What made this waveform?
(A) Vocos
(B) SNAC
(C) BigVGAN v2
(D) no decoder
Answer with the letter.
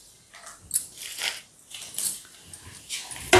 D